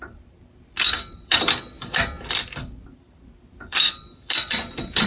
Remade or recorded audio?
remade